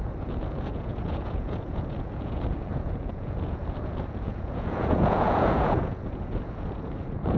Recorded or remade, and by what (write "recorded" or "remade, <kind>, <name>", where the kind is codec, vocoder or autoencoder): remade, vocoder, Vocos